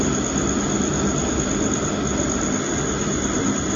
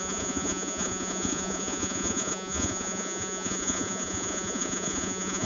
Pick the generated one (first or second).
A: second